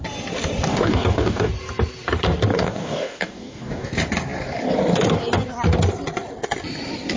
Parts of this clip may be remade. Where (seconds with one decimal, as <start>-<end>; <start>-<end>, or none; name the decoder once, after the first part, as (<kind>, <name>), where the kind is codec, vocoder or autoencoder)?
0.7-1.5 (codec, DAC); 2.5-3.9